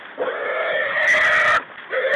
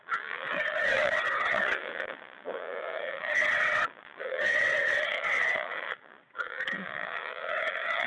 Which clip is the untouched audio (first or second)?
first